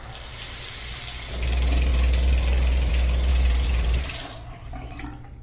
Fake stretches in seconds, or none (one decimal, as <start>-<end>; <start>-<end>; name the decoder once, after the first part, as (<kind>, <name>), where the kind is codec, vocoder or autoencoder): 1.9-2.9 (vocoder, BigVGAN v2); 3.3-4.8